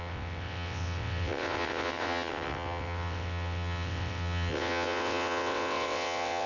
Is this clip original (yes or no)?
no